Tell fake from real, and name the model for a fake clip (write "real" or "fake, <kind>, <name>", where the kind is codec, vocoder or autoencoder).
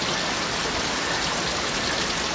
real